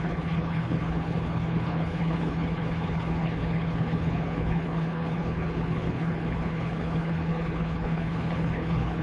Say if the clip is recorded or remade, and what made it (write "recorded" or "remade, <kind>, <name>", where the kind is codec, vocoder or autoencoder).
remade, codec, HILCodec